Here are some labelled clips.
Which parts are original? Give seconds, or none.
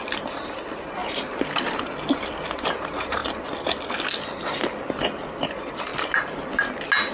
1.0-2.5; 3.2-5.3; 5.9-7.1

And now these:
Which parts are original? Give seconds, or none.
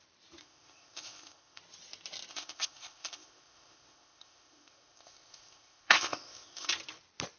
0.0-0.4; 1.6-2.3; 6.7-7.4